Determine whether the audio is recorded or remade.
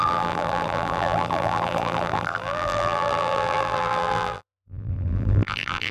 remade